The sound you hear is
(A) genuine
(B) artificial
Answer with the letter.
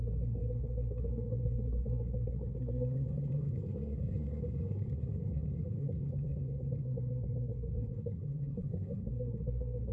B